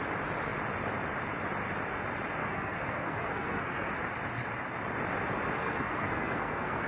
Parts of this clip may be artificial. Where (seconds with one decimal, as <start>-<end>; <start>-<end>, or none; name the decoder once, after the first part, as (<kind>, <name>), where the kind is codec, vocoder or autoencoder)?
2.4-3.9 (codec, SNAC); 5.6-6.9